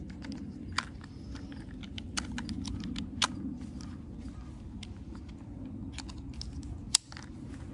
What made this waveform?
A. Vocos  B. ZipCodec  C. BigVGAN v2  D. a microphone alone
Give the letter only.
D